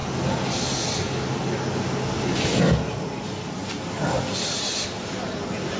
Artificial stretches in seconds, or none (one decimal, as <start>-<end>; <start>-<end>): none